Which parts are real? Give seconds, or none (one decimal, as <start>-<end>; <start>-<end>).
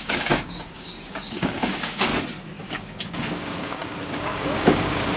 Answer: 2.1-2.6